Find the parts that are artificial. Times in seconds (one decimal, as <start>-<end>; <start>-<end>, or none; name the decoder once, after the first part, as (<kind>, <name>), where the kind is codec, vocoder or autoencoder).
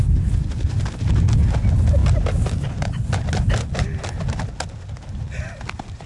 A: none